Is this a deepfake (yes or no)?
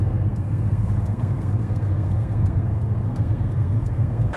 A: yes